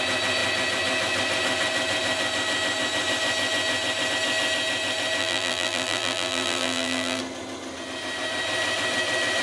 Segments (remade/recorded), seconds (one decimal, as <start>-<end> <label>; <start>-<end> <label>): 0.0-5.2 recorded; 5.2-7.2 remade; 7.2-9.4 recorded